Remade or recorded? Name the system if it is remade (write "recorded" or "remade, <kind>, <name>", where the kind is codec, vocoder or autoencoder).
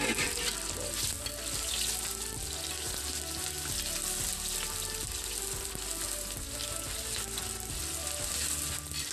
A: recorded